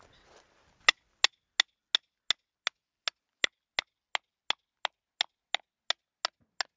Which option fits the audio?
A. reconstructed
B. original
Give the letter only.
B